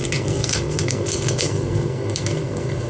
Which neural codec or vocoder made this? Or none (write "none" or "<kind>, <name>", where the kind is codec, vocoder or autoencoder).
codec, SNAC